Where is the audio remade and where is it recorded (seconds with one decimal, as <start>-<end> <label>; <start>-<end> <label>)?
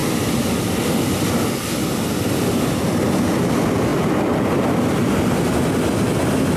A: 0.0-6.6 recorded